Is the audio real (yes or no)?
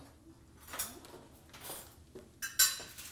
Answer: yes